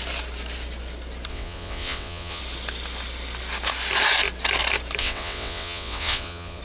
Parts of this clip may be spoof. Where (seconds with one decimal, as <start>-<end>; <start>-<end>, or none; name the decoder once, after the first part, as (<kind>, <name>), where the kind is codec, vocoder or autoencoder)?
1.3-2.4 (vocoder, WaveNeXt); 5.0-6.6